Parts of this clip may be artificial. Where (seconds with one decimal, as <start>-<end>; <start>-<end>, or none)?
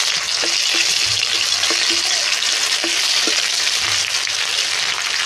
none